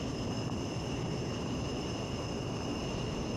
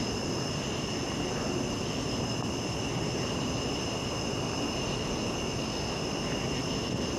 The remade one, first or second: first